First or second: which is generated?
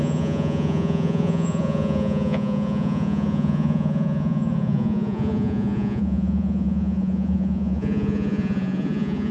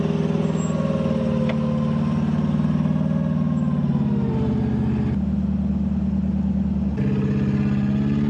first